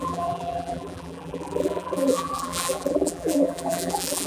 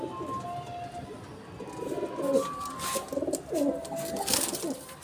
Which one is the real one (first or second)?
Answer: second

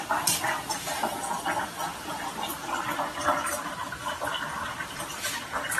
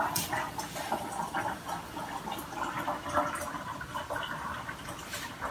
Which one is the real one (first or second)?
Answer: second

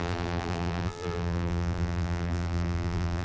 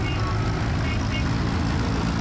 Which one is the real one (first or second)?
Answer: second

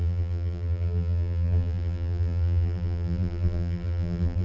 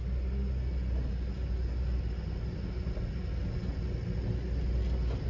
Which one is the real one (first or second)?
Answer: second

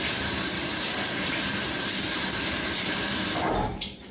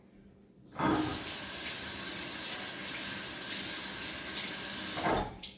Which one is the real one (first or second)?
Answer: second